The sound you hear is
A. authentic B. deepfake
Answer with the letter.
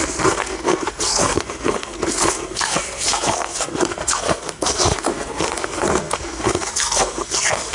B